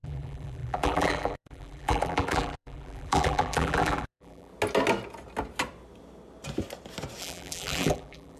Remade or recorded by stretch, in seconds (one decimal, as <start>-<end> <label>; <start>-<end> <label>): 0.0-4.5 remade; 4.5-7.2 recorded; 7.2-8.4 remade